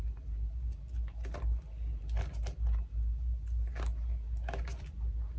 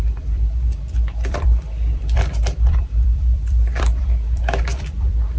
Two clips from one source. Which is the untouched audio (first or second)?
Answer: first